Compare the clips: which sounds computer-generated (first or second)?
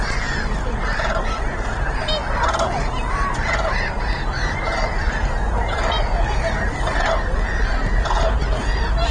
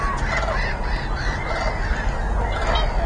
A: first